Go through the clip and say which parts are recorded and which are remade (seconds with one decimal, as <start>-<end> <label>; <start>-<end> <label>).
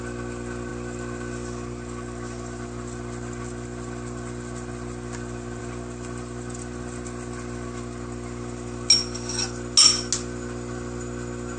0.0-11.6 recorded